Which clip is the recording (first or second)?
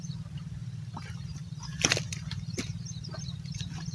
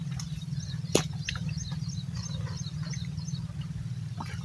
second